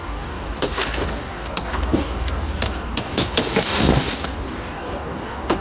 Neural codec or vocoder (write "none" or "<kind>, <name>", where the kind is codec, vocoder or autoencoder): codec, DAC